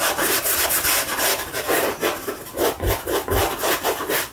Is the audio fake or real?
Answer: real